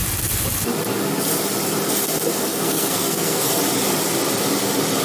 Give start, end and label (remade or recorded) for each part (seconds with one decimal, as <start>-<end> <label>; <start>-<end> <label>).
0.0-2.5 recorded; 2.5-3.5 remade; 3.5-5.0 recorded